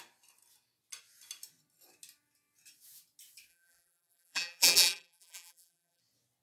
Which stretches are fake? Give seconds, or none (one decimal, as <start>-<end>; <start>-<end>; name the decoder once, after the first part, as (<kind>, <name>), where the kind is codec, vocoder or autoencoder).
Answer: 3.5-6.0 (vocoder, BigVGAN v2)